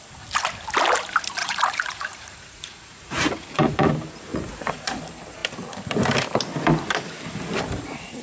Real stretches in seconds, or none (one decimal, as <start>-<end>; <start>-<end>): 0.0-1.4; 3.9-4.3; 5.0-8.2